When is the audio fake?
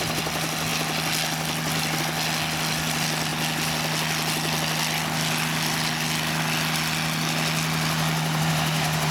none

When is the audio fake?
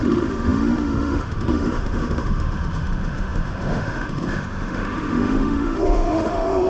0.0-6.7 (autoencoder, DAC-VAE)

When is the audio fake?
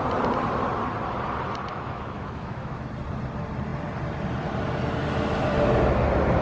1.7-2.9 (autoencoder, DAC-VAE)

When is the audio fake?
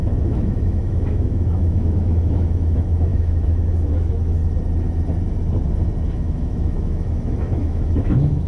0.0-4.4 (autoencoder, DAC-VAE); 6.1-8.5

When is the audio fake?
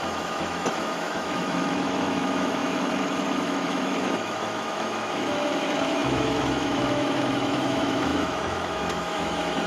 0.0-9.7 (autoencoder, DAC-VAE)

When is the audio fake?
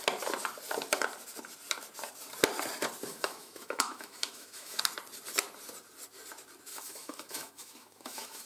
3.1-4.8 (autoencoder, DAC-VAE); 6.7-8.5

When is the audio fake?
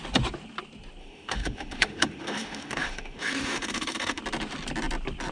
1.0-4.2 (autoencoder, DAC-VAE)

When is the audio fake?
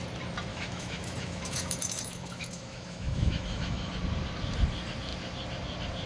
0.5-3.9 (autoencoder, DAC-VAE)